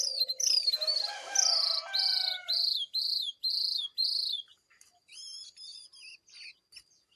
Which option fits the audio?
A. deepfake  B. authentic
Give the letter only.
B